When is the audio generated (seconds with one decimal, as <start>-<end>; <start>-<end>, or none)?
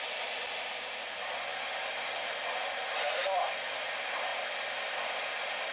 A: 0.0-1.5; 2.9-5.7